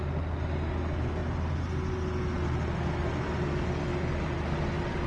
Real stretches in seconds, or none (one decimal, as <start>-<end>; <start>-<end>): 0.0-5.1